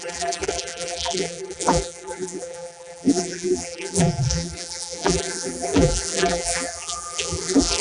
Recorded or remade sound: remade